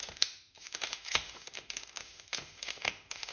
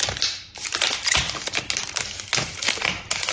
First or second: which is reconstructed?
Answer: first